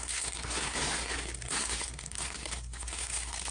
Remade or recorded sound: remade